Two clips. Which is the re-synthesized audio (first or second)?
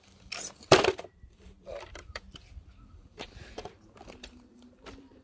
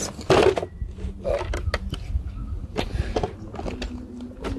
first